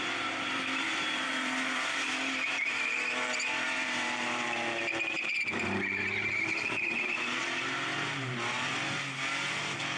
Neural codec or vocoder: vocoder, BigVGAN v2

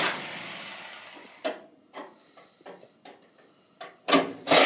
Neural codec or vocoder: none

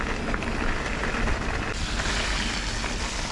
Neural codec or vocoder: none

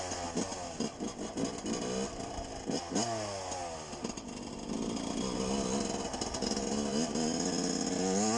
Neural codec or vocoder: none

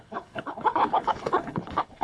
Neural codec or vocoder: codec, HILCodec